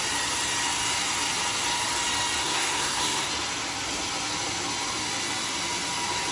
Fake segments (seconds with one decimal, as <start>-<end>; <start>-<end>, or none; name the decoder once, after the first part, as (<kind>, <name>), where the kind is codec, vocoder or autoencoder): 2.4-3.3 (codec, SNAC)